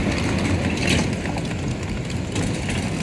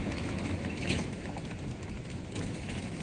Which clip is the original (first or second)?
first